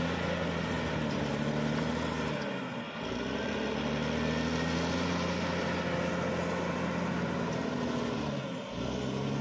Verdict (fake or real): real